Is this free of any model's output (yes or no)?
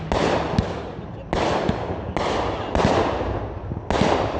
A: yes